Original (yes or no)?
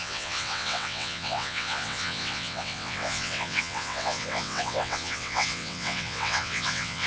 no